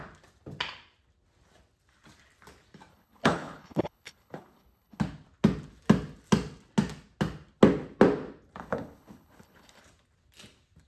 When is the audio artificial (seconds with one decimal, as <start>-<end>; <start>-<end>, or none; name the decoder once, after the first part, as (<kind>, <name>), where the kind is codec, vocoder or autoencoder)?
2.9-5.0 (codec, HILCodec); 8.6-9.8